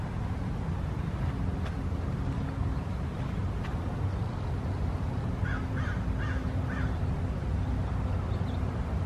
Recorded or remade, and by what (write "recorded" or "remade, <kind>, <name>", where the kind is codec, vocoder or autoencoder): recorded